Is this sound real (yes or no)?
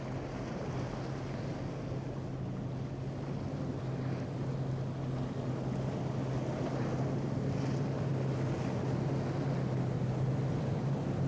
yes